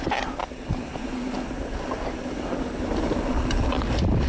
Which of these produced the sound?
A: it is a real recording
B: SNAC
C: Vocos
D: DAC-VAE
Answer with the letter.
A